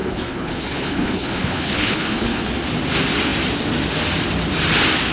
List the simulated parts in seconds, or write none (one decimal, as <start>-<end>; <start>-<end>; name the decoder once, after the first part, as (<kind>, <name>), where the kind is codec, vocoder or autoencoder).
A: 0.0-2.5 (codec, HILCodec)